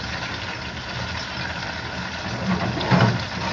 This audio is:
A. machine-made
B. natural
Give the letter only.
B